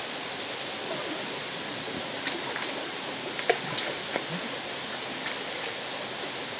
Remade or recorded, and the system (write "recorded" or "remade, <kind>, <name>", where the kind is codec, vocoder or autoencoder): recorded